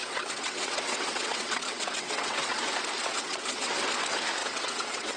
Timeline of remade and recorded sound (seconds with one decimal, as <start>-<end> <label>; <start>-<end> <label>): 0.0-2.6 remade; 2.6-3.0 recorded; 3.0-3.7 remade; 3.7-4.4 recorded; 4.4-5.2 remade